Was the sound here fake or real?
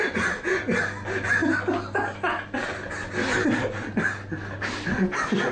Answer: real